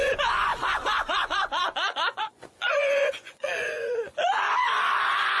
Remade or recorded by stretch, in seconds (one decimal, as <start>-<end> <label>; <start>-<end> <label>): 0.0-5.4 remade